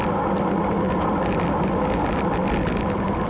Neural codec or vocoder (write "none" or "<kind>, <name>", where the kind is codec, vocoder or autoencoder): none